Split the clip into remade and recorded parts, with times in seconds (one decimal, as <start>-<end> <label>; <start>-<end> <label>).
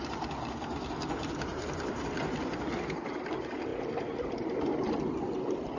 0.0-1.5 recorded; 1.5-2.2 remade; 2.2-3.7 recorded; 3.7-4.3 remade; 4.3-5.8 recorded